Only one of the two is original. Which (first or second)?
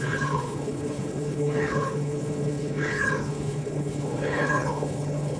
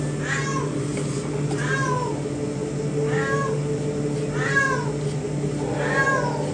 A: second